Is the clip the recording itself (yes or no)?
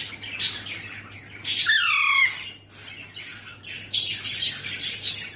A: yes